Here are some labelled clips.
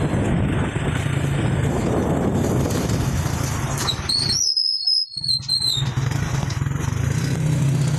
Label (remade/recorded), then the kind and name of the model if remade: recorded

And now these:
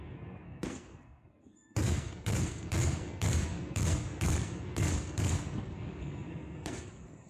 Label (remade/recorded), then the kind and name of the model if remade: remade, codec, SNAC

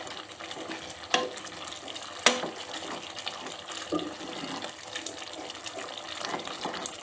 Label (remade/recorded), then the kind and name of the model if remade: recorded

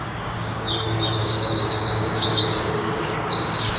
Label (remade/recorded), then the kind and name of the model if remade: remade, codec, DAC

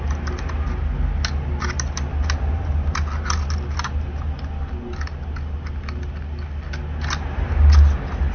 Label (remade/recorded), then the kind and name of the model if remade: recorded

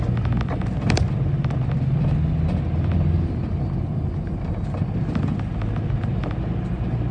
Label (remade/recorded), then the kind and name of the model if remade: recorded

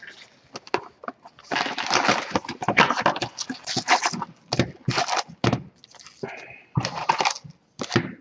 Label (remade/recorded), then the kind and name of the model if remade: recorded